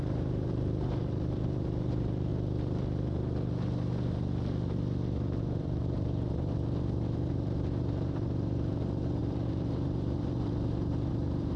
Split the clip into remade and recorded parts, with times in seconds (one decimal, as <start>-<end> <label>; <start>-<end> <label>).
0.0-2.3 remade; 2.3-5.4 recorded; 5.4-11.6 remade